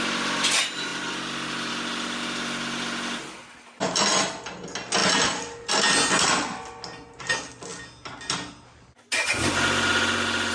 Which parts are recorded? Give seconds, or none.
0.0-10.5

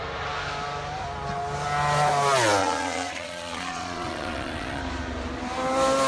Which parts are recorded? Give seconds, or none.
0.0-2.6; 4.8-6.1